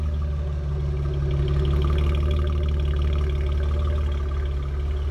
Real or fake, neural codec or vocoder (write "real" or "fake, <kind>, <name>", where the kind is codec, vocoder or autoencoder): real